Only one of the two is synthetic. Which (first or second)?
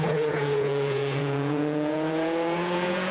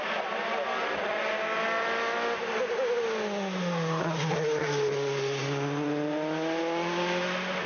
first